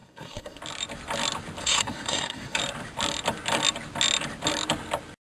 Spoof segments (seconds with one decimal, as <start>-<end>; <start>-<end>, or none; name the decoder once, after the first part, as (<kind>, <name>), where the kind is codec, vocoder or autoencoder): 0.0-0.6 (codec, SNAC); 1.6-2.6